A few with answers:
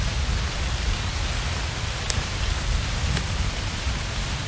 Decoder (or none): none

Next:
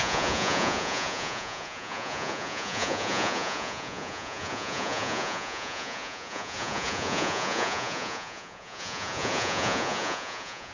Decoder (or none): vocoder, Vocos